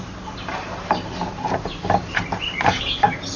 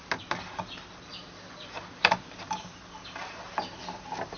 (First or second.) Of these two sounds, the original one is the second